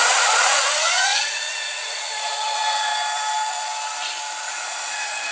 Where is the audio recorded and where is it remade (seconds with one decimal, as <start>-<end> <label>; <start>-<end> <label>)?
0.0-2.9 remade; 2.9-4.4 recorded; 4.4-5.3 remade